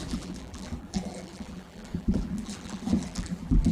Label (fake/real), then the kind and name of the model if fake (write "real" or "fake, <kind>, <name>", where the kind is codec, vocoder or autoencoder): fake, vocoder, BigVGAN v2